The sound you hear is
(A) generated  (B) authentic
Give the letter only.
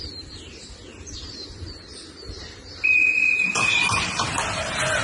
A